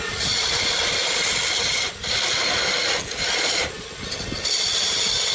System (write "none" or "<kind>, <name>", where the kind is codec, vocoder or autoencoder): none